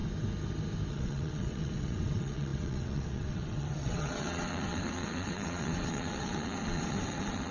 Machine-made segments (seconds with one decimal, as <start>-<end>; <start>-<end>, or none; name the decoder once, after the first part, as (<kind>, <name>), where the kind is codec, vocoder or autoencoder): 0.9-7.5 (vocoder, WaveNeXt)